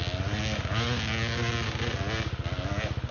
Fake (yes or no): no